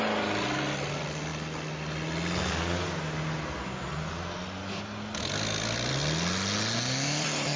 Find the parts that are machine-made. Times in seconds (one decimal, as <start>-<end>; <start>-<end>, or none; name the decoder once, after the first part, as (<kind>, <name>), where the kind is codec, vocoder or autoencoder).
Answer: none